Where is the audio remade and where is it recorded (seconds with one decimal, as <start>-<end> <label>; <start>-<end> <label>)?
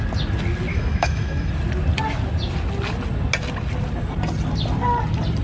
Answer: 0.0-0.7 recorded; 0.7-1.5 remade; 1.5-5.4 recorded